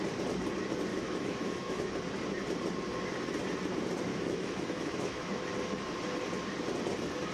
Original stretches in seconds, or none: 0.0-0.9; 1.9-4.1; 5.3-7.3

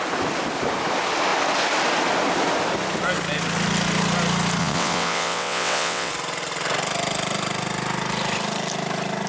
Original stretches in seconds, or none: 0.0-4.6; 6.1-9.3

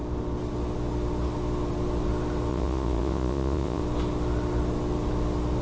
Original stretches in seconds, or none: 0.0-2.5; 3.8-5.6

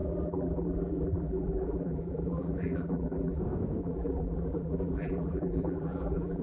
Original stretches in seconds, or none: 3.4-3.8

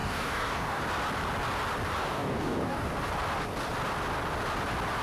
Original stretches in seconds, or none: 0.8-2.0; 2.9-5.0